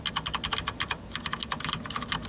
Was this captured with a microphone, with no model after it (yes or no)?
yes